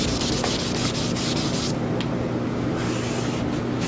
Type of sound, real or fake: real